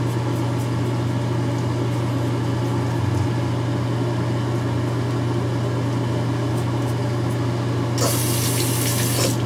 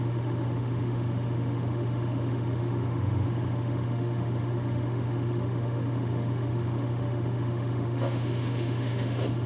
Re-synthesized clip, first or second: second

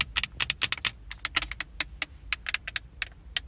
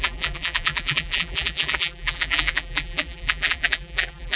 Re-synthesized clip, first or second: second